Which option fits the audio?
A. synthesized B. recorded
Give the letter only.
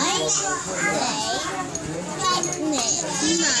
B